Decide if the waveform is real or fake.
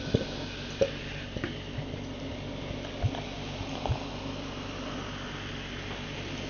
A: real